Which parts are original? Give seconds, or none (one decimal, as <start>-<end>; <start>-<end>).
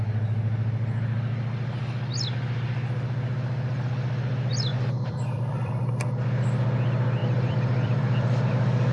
0.0-4.7; 5.9-7.2; 8.5-8.9